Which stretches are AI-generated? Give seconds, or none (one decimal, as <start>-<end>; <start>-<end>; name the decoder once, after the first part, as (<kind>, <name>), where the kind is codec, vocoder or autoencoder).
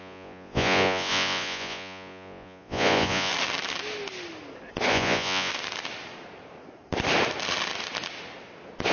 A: 0.0-3.3 (vocoder, Vocos); 4.9-5.5